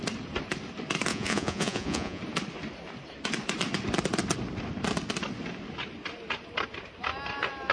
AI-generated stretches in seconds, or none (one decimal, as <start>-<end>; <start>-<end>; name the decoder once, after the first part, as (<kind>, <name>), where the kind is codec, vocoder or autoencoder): 1.1-2.2 (vocoder, Vocos)